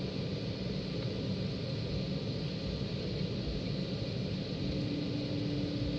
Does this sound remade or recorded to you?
recorded